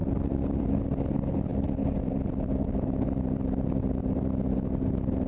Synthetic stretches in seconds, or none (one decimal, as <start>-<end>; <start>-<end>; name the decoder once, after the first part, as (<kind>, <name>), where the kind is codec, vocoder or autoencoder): 0.0-0.7 (vocoder, BigVGAN v2); 1.5-3.3